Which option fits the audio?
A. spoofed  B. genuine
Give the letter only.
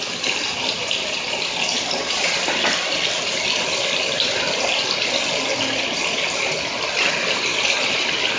B